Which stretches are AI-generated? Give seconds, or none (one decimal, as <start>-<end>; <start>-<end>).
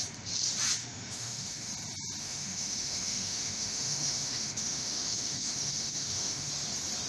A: 0.8-1.7; 2.2-6.5